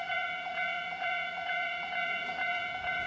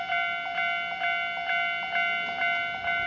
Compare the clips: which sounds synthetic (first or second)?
first